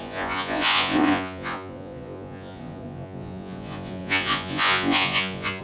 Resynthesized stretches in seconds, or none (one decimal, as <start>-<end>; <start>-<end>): 0.0-5.6